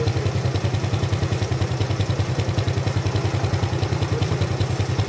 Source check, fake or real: real